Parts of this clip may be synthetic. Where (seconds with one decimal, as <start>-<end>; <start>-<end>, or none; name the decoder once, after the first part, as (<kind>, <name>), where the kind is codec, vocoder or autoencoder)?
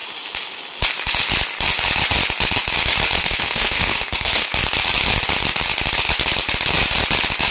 3.2-4.5 (codec, SNAC)